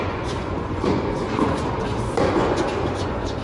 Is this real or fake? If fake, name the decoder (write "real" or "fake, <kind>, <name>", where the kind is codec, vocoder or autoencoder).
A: fake, vocoder, Vocos